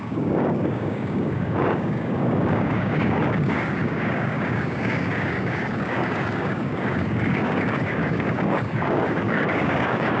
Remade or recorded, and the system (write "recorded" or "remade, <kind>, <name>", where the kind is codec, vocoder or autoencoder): remade, codec, DAC